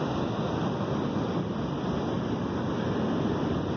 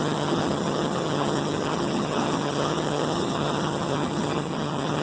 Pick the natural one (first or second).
first